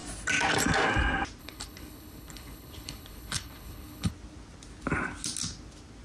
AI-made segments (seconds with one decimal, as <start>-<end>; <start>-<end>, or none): 1.4-4.1